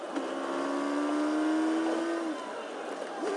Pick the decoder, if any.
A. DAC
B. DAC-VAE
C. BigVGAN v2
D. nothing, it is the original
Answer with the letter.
D